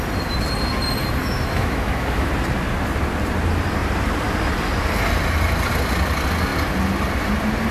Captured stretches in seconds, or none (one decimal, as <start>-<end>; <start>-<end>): 0.0-1.2; 2.3-7.7